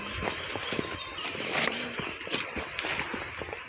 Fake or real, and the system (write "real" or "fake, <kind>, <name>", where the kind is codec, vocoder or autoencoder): fake, vocoder, BigVGAN v2